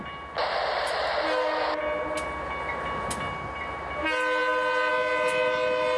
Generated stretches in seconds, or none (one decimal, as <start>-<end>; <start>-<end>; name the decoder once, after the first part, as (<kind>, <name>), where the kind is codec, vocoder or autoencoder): 0.4-1.1 (vocoder, BigVGAN v2)